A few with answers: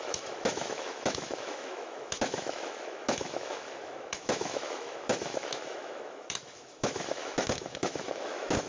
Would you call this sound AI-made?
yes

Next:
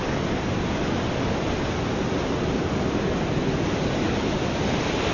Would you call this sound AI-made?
no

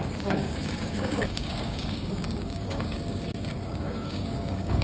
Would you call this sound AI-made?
yes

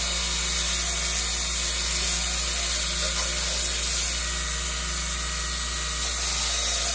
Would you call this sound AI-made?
no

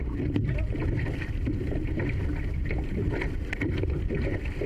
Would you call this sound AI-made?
no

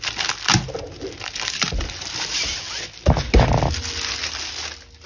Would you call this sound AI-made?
no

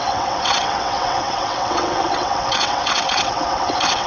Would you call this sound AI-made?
yes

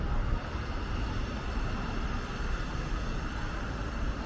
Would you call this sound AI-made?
no